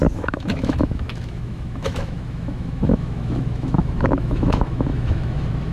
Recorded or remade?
remade